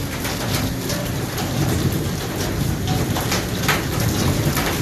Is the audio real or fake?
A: real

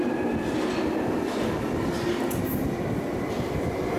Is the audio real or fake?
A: real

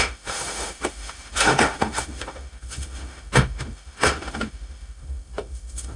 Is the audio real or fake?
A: fake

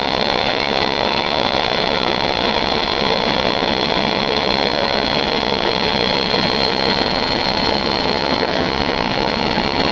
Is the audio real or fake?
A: fake